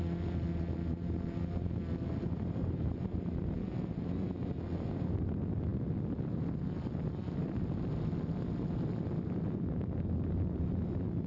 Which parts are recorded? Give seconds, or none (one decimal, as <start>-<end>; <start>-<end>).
0.0-11.3